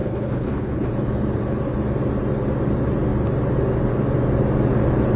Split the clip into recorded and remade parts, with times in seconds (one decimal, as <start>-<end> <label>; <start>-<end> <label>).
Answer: 0.0-0.9 remade; 0.9-5.2 recorded